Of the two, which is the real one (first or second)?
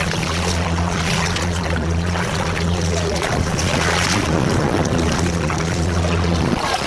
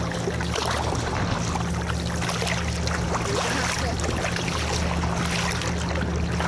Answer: second